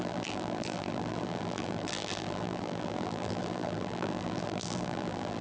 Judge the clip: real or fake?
fake